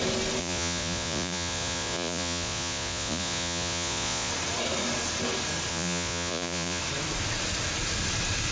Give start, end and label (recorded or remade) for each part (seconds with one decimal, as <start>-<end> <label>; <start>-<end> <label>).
0.0-0.4 recorded; 0.4-4.3 remade; 4.3-5.7 recorded; 5.7-6.8 remade; 6.8-8.5 recorded